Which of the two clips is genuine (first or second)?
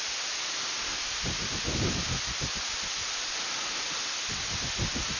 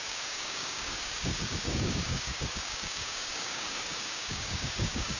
first